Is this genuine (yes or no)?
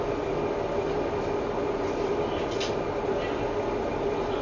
yes